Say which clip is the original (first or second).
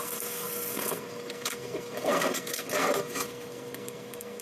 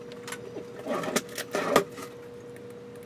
second